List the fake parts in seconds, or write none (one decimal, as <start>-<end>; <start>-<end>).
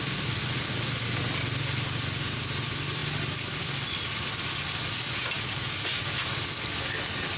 none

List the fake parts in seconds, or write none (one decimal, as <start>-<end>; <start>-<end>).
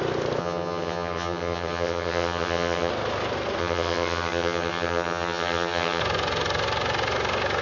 0.4-2.9; 3.6-6.0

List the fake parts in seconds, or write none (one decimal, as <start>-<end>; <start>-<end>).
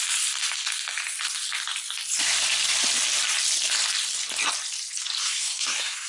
5.2-6.1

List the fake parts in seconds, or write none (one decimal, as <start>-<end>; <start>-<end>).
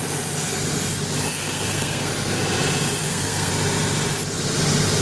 1.3-2.1; 3.0-3.5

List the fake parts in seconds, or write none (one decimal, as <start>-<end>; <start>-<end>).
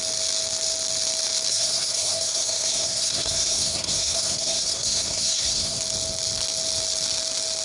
1.5-5.8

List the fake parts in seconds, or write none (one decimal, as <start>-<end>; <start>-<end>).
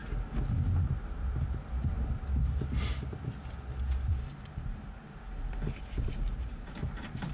4.2-7.3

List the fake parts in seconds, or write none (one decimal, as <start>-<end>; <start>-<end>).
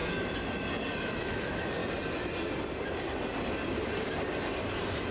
1.2-1.8